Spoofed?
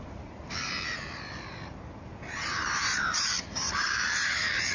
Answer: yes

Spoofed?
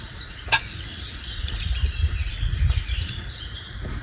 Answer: yes